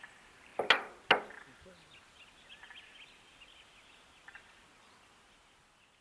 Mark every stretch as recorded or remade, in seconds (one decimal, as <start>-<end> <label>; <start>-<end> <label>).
0.0-6.0 recorded